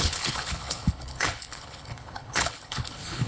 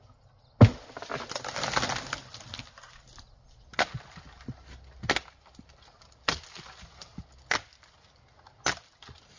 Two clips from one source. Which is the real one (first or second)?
second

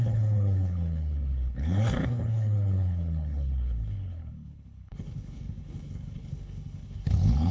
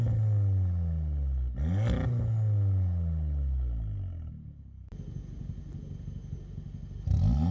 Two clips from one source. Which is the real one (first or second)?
second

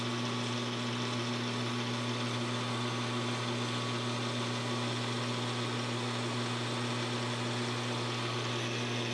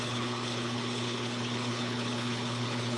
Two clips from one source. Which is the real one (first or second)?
first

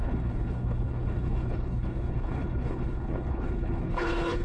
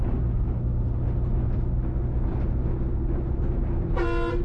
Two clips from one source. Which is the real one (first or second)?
second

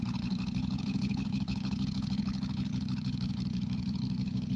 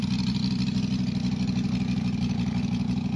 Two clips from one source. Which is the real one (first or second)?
second